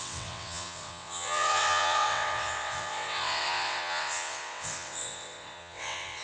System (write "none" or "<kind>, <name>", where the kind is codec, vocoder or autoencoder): vocoder, WaveNeXt